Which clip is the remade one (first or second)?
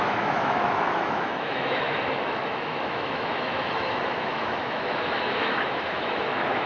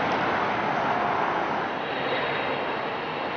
first